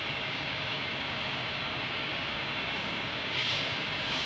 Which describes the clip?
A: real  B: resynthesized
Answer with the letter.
B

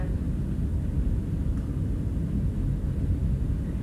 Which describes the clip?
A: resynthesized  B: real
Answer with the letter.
B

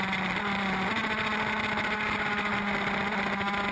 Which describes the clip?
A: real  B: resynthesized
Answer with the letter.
A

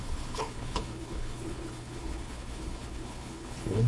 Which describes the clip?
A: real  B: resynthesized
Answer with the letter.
B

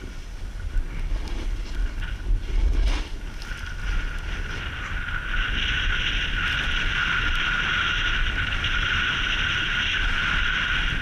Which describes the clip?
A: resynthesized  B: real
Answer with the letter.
B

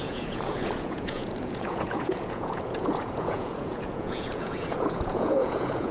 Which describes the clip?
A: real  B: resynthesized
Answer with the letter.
B